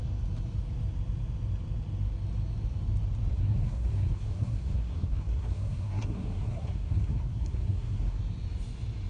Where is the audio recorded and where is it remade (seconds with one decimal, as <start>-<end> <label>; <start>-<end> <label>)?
0.0-3.3 recorded; 3.3-8.2 remade; 8.2-9.1 recorded